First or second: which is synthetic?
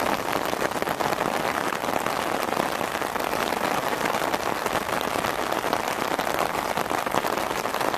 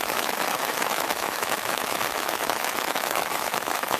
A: second